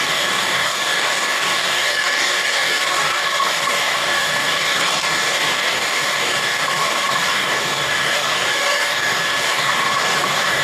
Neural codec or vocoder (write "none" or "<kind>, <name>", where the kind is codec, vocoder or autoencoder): codec, DAC